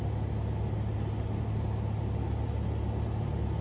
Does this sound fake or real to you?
real